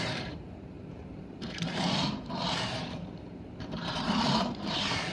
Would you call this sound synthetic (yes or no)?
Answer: yes